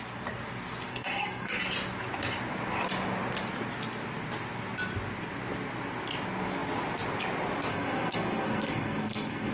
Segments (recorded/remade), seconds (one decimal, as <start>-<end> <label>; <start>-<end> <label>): 0.0-0.9 recorded; 0.9-1.6 remade; 1.6-7.7 recorded; 7.7-9.5 remade